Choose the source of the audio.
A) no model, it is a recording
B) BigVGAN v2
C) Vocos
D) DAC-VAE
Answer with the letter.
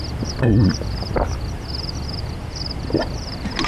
A